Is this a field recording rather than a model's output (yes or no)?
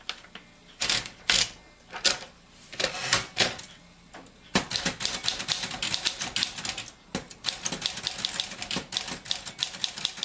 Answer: yes